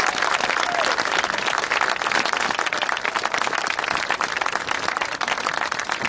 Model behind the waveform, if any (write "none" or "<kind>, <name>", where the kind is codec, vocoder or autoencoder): none